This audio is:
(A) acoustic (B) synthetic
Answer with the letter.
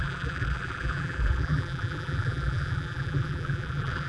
B